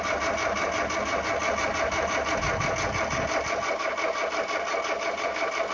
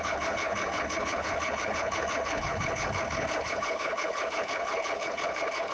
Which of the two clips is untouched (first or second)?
first